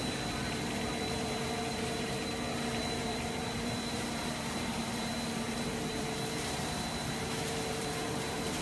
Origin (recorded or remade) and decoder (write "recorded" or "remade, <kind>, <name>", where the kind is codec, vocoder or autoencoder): remade, vocoder, BigVGAN v2